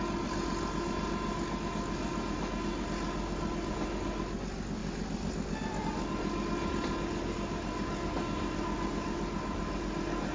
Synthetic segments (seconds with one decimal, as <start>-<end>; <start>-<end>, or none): none